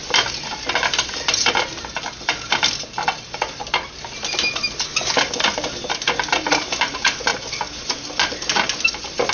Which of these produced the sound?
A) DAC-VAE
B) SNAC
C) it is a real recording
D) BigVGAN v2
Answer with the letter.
C